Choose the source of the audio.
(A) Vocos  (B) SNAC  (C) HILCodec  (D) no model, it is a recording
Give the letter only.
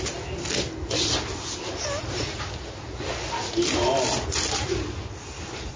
D